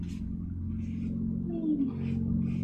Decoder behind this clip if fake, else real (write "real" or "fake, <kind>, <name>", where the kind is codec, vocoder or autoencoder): real